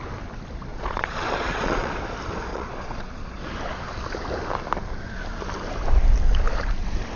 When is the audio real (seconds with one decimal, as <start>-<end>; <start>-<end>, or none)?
0.0-0.7; 2.0-2.5; 3.4-7.2